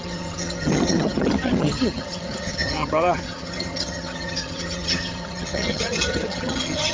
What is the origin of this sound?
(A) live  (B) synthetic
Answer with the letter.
B